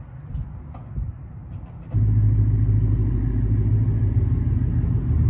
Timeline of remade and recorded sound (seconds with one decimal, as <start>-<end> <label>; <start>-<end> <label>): 0.0-5.3 recorded